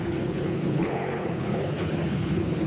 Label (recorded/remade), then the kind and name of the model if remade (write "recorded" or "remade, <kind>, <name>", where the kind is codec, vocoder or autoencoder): remade, codec, HILCodec